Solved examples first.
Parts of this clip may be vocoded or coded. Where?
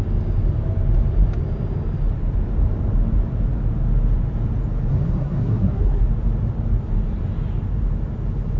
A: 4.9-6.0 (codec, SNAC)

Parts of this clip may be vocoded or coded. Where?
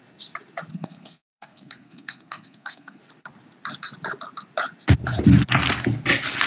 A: 0.7-3.0 (codec, SNAC)